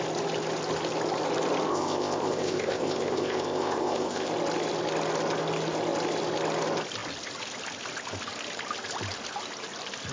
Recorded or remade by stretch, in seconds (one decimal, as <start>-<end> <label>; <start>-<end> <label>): 0.0-1.7 recorded; 1.7-4.3 remade; 4.3-10.1 recorded